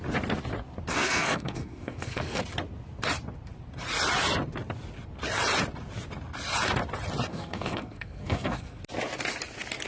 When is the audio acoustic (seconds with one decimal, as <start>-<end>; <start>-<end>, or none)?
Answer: 0.0-0.9; 2.4-7.3; 8.8-9.9